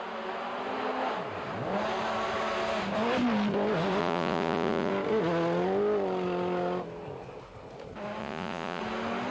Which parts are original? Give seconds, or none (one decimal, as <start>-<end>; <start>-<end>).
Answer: 0.0-4.0; 4.9-8.2; 8.8-9.3